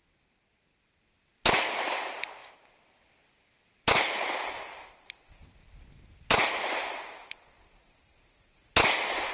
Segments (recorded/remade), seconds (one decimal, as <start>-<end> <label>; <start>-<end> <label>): 0.0-9.3 recorded